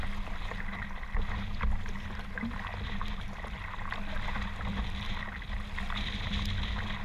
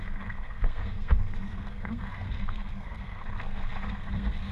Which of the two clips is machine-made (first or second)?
second